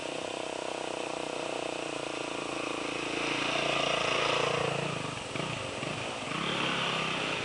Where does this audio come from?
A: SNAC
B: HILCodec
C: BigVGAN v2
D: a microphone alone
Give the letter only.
D